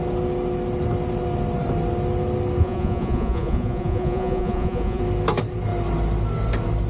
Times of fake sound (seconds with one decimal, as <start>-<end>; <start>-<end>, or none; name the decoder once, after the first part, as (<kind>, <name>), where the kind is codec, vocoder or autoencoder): 2.6-5.0 (vocoder, Vocos)

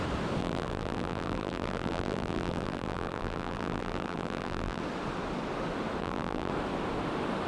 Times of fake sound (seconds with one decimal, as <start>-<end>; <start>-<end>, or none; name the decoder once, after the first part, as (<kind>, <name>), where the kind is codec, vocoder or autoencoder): 0.4-4.8 (vocoder, BigVGAN v2); 6.0-6.5

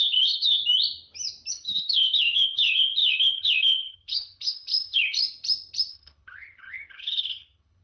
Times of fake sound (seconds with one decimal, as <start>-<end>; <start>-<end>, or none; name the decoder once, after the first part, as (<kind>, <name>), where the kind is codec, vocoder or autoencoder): 0.0-0.6 (codec, HILCodec); 1.5-5.2; 5.9-7.8

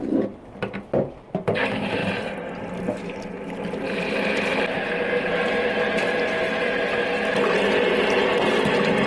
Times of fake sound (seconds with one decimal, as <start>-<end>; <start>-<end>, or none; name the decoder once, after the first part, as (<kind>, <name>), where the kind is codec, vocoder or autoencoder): none

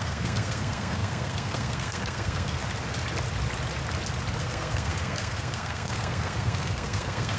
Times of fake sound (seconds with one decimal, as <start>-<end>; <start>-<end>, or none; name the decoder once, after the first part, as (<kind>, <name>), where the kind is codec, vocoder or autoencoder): 0.0-2.6 (codec, SNAC); 4.4-7.4